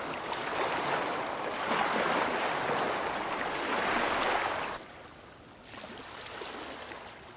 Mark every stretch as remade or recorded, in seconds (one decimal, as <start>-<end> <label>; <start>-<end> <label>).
0.0-7.4 recorded